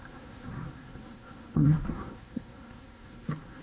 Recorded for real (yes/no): no